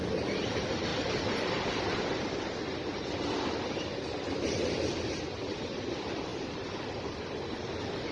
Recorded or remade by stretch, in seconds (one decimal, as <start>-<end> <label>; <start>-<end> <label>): 0.0-8.1 recorded